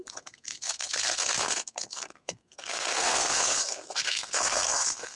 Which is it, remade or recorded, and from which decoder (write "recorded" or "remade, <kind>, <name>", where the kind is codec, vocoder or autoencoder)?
remade, codec, SNAC